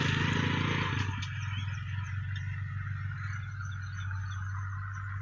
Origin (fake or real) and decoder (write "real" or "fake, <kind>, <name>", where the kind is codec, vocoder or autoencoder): real